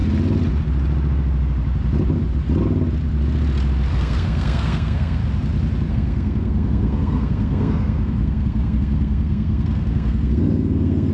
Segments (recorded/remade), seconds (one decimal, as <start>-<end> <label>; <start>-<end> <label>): 0.0-3.9 recorded; 3.9-5.2 remade; 5.2-5.9 recorded; 5.9-11.1 remade